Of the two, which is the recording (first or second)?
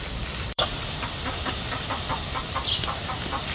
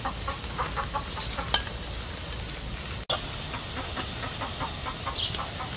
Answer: second